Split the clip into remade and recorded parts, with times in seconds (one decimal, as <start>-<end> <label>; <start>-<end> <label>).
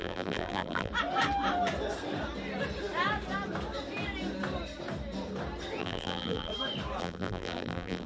0.0-0.9 remade; 0.9-5.8 recorded; 5.8-6.5 remade; 6.5-7.0 recorded; 7.0-8.1 remade